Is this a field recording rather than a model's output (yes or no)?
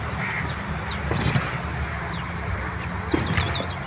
yes